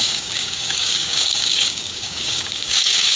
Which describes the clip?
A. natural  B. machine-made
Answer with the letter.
B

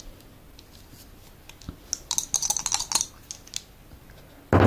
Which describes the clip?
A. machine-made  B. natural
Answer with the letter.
B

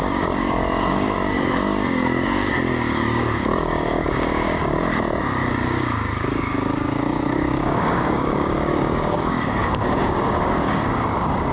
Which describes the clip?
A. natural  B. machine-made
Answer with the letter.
B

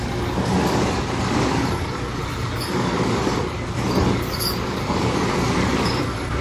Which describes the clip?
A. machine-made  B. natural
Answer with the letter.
A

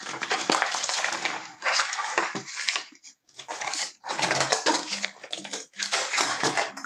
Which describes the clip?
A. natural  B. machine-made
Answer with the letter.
B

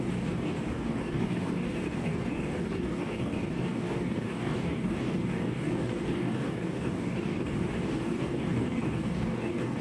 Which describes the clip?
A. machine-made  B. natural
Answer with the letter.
A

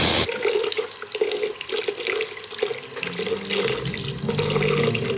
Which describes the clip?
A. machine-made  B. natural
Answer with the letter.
B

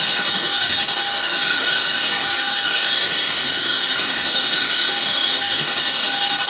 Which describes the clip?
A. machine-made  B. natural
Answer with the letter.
A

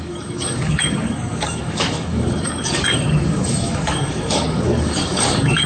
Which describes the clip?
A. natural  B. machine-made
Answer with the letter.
B